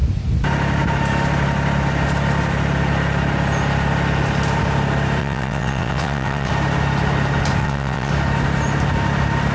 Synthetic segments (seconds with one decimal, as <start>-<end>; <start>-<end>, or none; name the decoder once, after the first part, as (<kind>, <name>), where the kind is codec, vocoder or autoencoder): 5.2-6.5 (vocoder, WaveNeXt); 7.6-8.1